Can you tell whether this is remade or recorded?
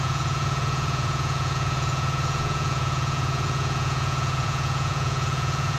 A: remade